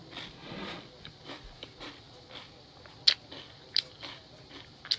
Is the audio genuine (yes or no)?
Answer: yes